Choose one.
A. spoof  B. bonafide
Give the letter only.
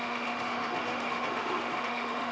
A